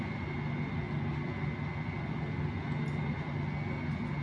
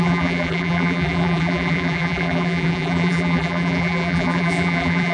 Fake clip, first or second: second